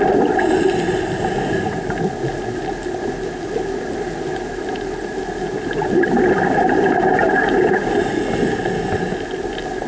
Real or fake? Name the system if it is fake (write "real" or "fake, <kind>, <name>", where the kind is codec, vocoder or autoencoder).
real